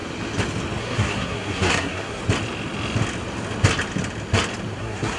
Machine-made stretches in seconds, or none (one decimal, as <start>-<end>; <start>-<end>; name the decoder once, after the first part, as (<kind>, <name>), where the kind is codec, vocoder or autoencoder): 0.8-2.2 (codec, SNAC); 4.8-5.2